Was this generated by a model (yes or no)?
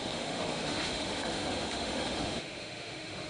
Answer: yes